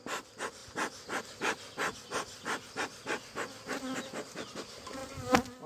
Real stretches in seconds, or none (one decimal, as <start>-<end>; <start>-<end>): 0.6-4.0; 5.0-5.7